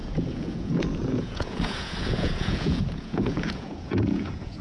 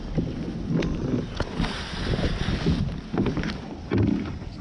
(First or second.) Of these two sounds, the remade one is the first